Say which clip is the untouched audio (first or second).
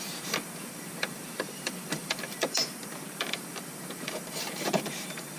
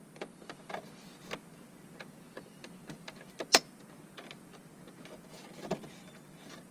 second